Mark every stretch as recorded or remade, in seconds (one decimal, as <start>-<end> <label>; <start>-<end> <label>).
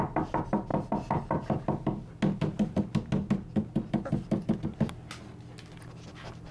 0.0-6.5 recorded